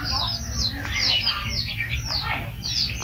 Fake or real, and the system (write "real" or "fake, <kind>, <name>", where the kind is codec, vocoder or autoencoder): real